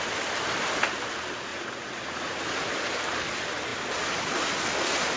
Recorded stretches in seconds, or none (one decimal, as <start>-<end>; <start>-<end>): 0.0-1.5; 2.4-5.2